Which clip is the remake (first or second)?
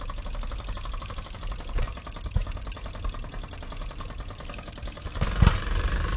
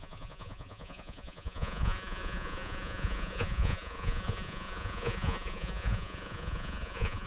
second